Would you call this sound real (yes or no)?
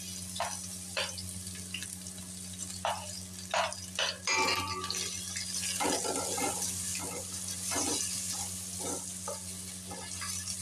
yes